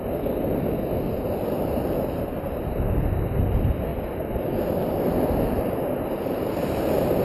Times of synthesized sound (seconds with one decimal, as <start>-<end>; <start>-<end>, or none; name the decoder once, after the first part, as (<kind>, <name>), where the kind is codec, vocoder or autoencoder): 3.9-7.2 (vocoder, BigVGAN v2)